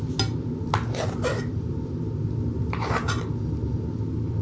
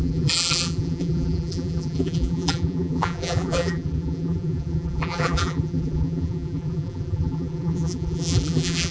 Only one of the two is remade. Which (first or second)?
second